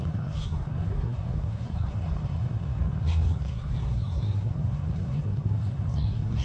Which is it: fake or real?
fake